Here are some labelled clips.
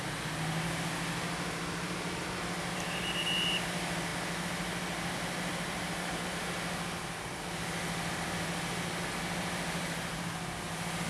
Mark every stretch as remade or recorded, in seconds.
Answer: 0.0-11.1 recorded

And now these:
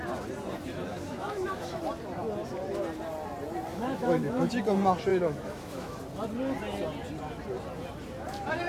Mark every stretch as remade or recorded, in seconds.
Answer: 0.0-0.9 recorded; 0.9-1.8 remade; 1.8-3.7 recorded; 3.7-4.5 remade; 4.5-5.1 recorded; 5.1-6.0 remade; 6.0-8.7 recorded